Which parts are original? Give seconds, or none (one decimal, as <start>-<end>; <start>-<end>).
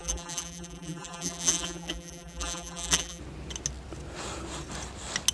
3.2-5.3